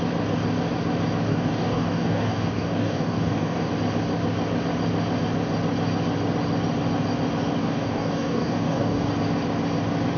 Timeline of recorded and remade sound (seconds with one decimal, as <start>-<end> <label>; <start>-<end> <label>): 0.0-1.3 recorded; 1.3-3.7 remade; 3.7-7.6 recorded; 7.6-9.1 remade; 9.1-10.2 recorded